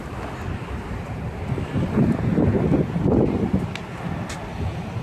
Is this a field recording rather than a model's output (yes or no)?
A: yes